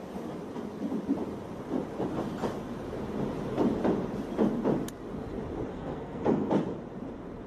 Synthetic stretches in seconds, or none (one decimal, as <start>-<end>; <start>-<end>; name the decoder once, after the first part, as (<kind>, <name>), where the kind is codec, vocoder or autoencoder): 5.7-6.5 (codec, SNAC)